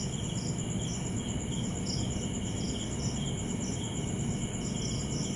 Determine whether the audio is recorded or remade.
recorded